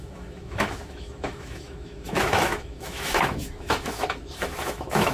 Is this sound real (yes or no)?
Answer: no